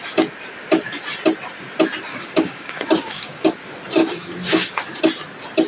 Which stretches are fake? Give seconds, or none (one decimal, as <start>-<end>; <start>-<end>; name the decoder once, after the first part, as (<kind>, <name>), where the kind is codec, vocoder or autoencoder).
2.1-3.5 (codec, DAC); 4.0-5.0